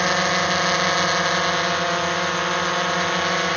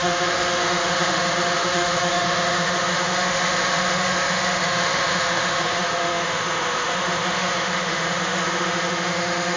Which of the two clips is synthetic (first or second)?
second